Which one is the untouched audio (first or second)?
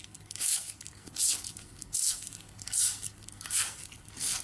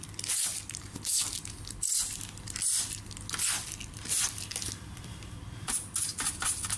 second